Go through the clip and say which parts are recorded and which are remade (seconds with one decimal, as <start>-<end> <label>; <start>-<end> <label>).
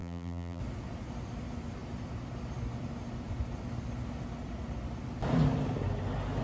0.0-0.6 remade; 0.6-6.4 recorded